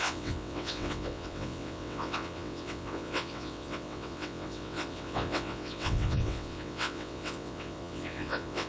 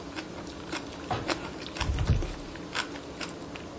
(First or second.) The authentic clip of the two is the second